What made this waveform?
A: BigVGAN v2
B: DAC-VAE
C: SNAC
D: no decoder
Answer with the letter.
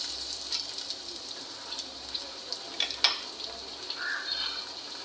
D